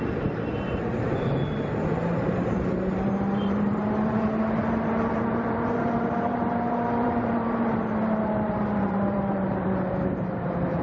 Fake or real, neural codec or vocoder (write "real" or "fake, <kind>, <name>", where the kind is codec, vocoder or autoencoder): fake, vocoder, BigVGAN v2